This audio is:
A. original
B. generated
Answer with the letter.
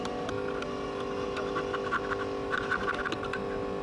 A